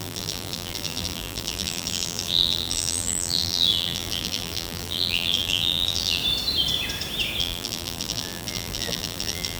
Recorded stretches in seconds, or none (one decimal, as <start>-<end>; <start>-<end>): 6.2-7.4

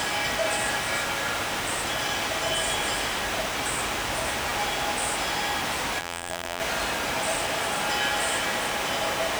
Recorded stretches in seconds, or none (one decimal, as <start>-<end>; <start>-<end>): 0.0-6.0; 6.6-9.4